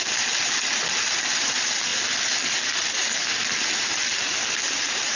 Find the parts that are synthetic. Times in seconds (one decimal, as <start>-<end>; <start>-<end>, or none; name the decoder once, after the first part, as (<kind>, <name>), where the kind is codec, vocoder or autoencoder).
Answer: none